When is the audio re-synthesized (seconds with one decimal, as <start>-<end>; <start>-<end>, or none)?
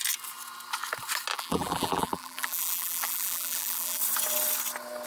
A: 1.3-4.0